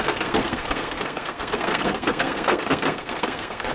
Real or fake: fake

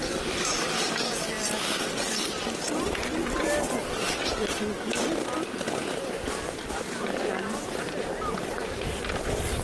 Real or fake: real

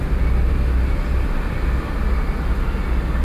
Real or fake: real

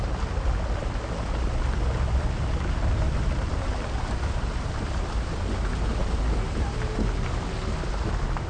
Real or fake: real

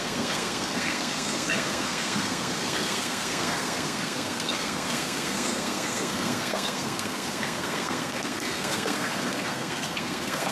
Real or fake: fake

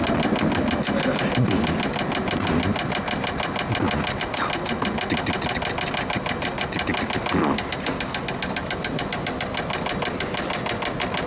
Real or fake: real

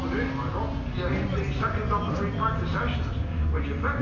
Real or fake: real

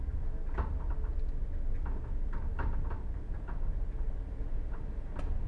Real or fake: real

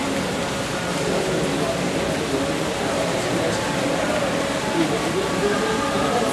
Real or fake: real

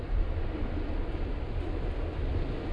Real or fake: real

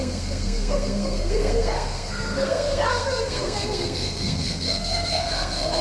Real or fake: fake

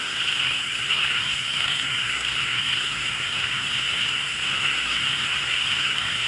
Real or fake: fake